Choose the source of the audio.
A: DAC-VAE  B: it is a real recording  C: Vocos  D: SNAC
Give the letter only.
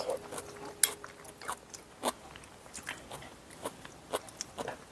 B